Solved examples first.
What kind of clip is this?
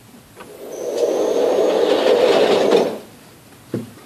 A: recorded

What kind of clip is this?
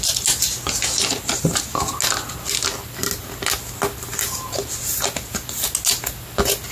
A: recorded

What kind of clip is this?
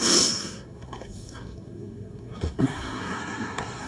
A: remade